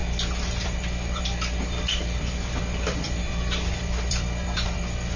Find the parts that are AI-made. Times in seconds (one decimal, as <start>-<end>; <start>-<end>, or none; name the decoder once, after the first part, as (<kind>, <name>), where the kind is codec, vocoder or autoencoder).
0.6-5.2 (vocoder, BigVGAN v2)